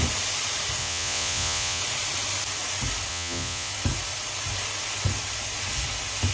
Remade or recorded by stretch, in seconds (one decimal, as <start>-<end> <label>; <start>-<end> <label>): 0.0-0.8 recorded; 0.8-1.8 remade; 1.8-3.1 recorded; 3.1-3.7 remade; 3.7-6.3 recorded

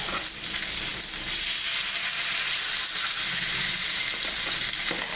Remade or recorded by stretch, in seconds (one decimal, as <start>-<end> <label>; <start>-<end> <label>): 0.0-5.2 recorded

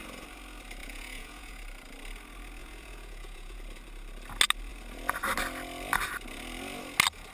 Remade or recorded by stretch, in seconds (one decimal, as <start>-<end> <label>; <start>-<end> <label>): 0.0-0.8 recorded; 0.8-1.6 remade; 1.6-2.6 recorded; 2.6-3.6 remade; 3.6-7.3 recorded

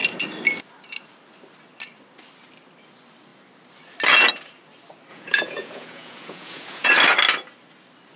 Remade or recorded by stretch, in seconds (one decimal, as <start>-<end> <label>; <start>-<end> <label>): 0.0-5.1 recorded; 5.1-6.9 remade; 6.9-8.2 recorded